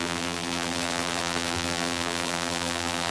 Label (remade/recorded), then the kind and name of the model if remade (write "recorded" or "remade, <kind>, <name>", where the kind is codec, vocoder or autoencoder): remade, vocoder, BigVGAN v2